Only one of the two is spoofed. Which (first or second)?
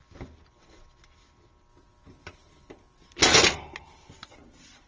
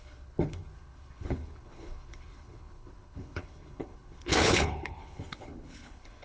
second